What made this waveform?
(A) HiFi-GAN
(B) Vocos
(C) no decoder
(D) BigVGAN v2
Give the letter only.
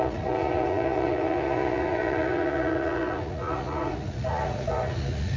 B